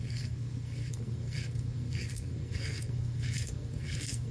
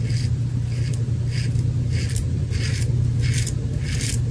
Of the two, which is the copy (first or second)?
first